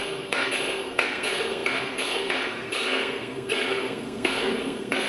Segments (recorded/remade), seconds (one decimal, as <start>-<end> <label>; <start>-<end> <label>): 0.0-5.1 remade